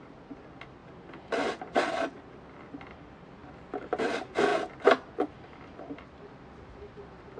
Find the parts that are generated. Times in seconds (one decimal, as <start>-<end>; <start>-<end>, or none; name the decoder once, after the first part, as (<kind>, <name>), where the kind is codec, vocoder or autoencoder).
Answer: none

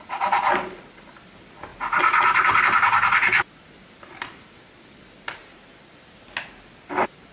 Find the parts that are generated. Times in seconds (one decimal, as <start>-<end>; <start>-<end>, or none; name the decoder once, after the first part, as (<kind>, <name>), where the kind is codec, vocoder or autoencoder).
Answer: none